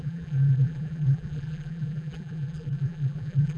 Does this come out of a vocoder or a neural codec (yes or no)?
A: yes